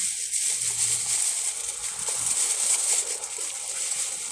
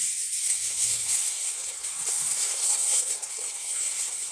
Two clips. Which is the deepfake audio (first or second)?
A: second